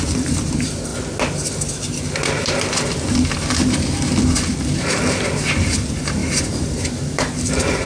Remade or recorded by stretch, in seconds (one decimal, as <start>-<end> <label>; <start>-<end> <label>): 0.0-0.9 remade; 0.9-5.6 recorded; 5.6-7.9 remade